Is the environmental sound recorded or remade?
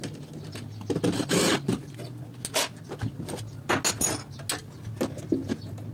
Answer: recorded